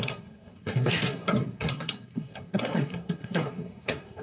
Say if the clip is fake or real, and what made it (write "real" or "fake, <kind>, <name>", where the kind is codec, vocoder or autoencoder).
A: fake, codec, SNAC